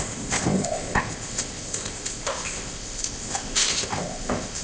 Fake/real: fake